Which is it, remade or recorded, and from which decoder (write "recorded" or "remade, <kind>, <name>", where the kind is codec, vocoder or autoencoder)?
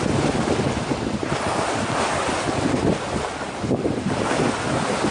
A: recorded